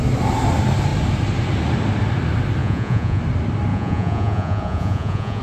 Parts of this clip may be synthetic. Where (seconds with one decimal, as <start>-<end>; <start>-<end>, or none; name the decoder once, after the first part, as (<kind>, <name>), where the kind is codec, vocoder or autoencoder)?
2.6-3.2 (vocoder, Vocos); 3.7-5.4

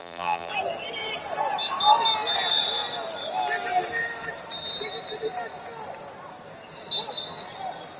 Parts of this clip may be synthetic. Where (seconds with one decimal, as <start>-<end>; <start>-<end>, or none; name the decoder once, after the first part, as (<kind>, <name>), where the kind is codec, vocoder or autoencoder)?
0.0-0.5 (vocoder, BigVGAN v2)

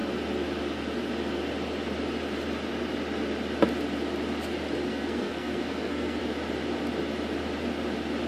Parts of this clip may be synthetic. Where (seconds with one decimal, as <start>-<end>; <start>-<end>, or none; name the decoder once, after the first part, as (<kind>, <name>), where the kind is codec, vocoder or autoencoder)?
4.9-6.2 (codec, SNAC)

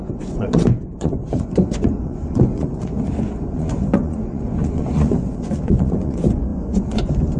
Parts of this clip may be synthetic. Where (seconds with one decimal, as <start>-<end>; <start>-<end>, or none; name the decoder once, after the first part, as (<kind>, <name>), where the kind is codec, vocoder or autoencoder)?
0.0-7.4 (vocoder, Vocos)

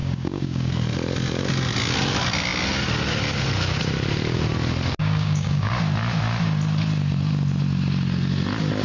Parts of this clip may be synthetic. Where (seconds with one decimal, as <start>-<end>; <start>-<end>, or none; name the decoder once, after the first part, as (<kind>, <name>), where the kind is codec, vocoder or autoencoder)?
0.0-0.7 (codec, DAC); 5.0-5.7

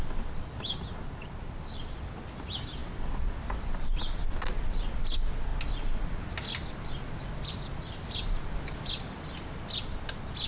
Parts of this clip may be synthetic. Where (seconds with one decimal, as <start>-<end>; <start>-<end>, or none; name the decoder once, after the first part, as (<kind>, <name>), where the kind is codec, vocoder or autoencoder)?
none

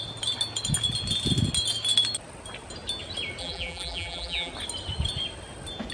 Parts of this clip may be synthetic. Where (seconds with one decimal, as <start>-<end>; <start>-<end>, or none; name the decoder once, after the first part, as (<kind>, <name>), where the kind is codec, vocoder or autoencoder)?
3.4-4.5 (vocoder, BigVGAN v2)